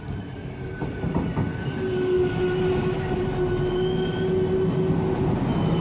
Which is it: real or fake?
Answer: real